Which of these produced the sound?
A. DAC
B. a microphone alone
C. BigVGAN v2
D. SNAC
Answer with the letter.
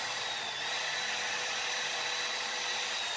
B